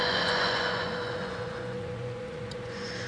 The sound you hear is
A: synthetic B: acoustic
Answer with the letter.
A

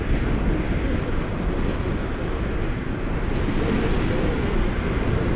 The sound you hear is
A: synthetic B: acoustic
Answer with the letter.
B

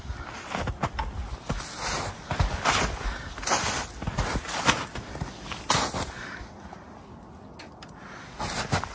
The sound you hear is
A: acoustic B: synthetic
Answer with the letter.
A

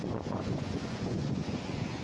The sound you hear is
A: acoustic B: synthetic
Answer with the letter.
B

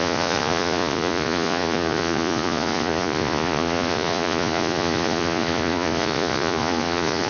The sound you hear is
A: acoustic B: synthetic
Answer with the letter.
B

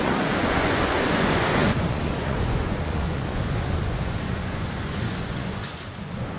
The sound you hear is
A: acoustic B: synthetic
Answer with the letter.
B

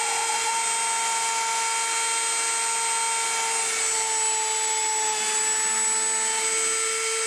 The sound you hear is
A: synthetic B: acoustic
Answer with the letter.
B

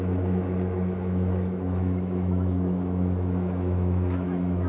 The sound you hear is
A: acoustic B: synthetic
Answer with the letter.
B